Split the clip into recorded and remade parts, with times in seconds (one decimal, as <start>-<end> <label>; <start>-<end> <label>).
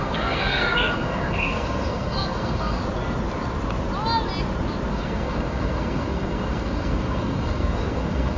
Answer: 0.0-2.8 remade; 2.8-4.9 recorded; 4.9-8.4 remade